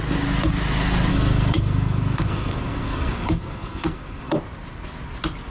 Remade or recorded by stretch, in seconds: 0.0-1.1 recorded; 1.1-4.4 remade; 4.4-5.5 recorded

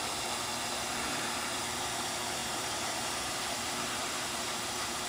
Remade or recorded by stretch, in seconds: 0.0-1.0 recorded; 1.0-1.6 remade; 1.6-2.4 recorded; 2.4-3.5 remade; 3.5-4.0 recorded; 4.0-5.1 remade